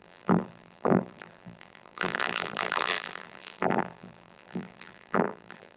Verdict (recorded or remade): remade